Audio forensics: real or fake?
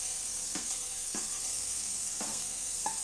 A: fake